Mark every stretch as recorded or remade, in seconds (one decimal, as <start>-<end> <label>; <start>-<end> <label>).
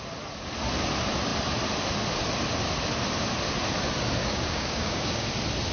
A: 0.0-4.2 recorded; 4.2-5.3 remade; 5.3-5.7 recorded